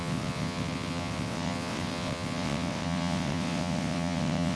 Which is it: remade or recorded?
remade